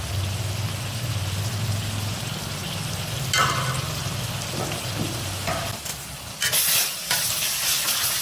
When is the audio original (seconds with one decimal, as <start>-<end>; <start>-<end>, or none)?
0.0-8.2